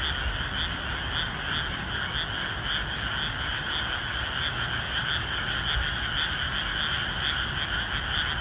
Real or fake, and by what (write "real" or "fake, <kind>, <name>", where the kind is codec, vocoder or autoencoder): real